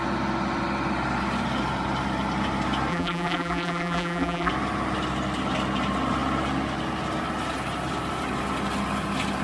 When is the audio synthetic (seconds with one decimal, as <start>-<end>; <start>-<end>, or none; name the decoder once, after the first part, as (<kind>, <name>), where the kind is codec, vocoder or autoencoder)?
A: 2.9-4.5 (vocoder, BigVGAN v2)